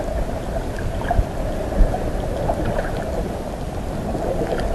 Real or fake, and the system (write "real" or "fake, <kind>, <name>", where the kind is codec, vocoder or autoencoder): real